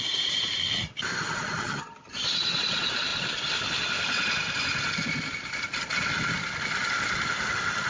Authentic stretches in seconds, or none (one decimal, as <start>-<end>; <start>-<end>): 0.0-1.6; 2.1-7.9